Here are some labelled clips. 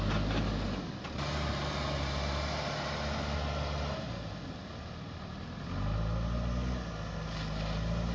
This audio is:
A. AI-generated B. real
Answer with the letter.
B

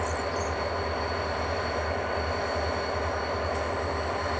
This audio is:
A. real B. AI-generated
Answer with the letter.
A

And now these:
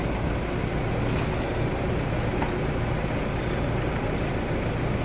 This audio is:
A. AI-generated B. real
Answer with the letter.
B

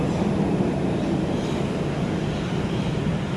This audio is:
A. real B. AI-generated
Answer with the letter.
A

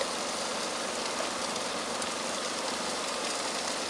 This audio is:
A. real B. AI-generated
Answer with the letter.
A